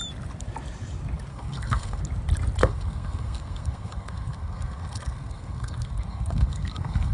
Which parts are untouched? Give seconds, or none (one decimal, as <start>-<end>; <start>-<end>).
0.0-1.3; 2.0-2.6